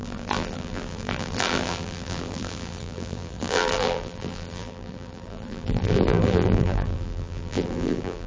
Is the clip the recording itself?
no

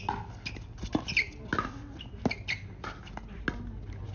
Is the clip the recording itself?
yes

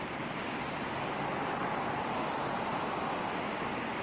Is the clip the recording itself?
yes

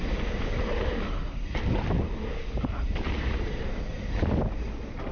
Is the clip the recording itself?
yes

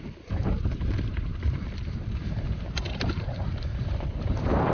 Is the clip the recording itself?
no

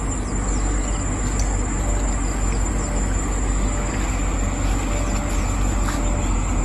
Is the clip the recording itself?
yes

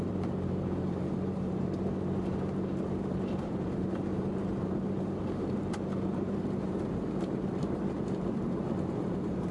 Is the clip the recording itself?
no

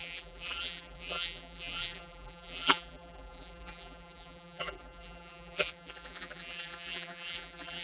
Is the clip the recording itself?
no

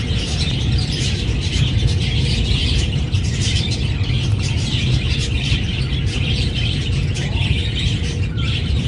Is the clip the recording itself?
no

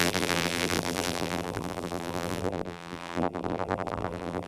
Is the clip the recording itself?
no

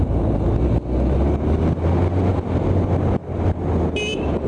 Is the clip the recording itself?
yes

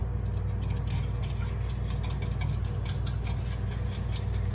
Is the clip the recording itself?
yes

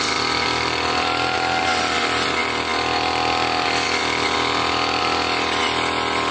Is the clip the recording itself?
yes